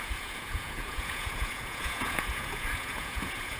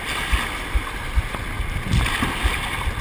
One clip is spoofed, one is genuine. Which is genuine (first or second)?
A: second